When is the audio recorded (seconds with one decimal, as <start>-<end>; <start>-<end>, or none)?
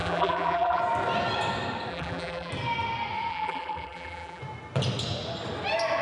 0.8-1.9; 2.5-3.3; 4.4-6.0